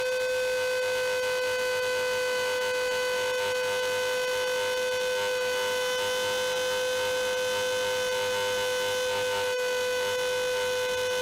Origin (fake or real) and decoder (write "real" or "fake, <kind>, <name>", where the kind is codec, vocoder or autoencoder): real